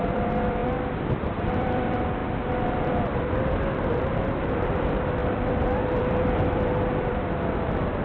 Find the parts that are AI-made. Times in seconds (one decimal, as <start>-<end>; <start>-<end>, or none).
0.0-8.0